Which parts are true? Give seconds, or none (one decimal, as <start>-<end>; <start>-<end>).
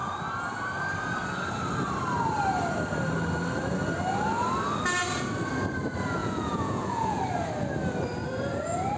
0.0-6.2; 7.2-9.0